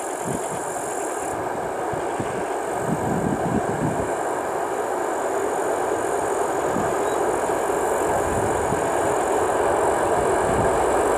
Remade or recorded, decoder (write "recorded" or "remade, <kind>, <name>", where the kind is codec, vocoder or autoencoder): recorded